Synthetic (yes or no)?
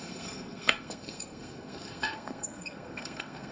yes